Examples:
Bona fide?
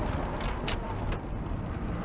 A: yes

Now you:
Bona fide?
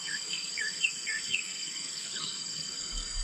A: no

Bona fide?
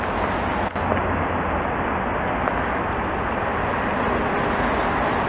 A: yes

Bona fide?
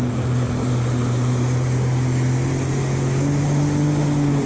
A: yes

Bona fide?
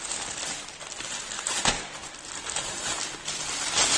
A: yes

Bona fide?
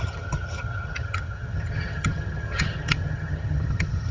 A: no